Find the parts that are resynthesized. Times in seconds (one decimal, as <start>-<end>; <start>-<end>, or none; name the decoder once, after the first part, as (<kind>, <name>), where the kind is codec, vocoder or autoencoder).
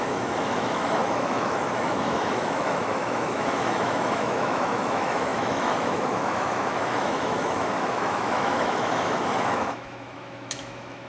0.0-11.1 (autoencoder, DAC-VAE)